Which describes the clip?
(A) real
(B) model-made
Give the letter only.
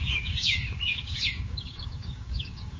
B